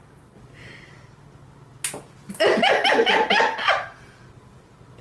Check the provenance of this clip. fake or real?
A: real